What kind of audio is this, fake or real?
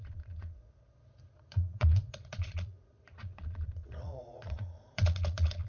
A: fake